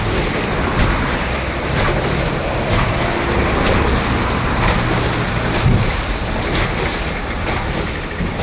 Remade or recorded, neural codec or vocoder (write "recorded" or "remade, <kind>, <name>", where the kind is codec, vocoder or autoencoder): recorded